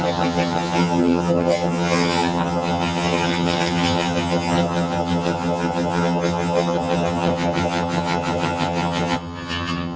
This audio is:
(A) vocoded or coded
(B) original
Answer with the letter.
A